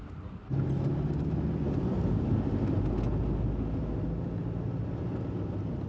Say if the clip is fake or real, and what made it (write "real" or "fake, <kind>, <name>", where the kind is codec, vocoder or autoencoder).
real